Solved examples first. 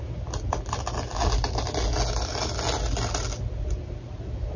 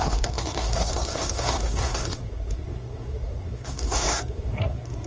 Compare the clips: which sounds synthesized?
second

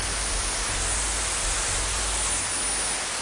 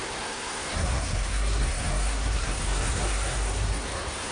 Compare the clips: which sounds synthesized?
second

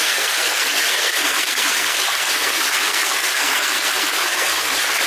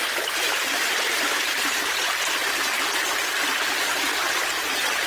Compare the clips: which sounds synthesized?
first